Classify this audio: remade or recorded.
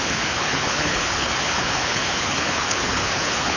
remade